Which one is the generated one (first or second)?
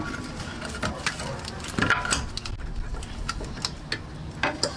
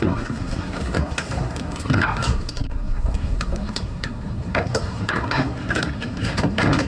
second